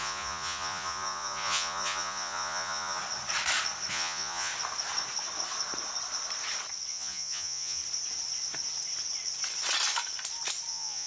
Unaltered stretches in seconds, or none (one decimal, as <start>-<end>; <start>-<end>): 3.0-3.9; 4.5-6.9; 7.8-10.7